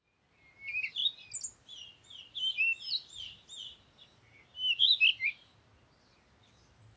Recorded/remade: recorded